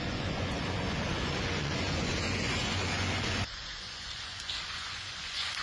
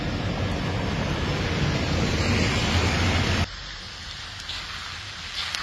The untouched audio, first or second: second